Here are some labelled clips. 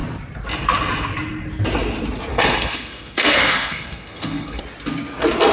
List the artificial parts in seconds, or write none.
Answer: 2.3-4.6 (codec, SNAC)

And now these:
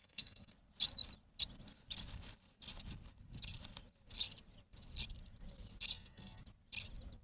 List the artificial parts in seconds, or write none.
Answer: 0.0-0.5 (codec, SNAC); 5.9-6.4

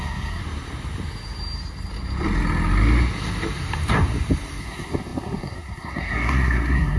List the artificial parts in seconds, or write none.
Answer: 0.0-0.4 (codec, SNAC); 4.6-7.0